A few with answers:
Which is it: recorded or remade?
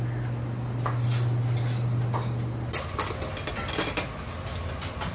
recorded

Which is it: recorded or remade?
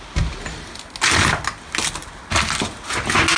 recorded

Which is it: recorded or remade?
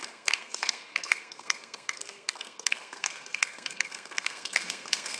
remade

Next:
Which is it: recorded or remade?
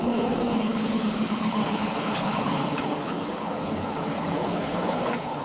remade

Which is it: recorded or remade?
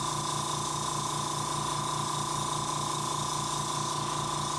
recorded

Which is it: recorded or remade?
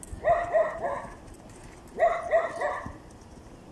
recorded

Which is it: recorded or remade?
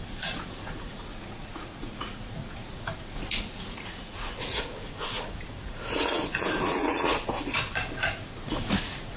remade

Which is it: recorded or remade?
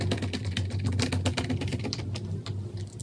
recorded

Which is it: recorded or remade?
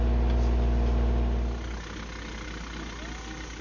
recorded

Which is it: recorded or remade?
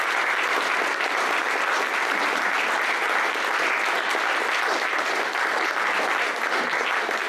recorded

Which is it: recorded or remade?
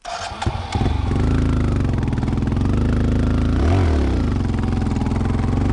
recorded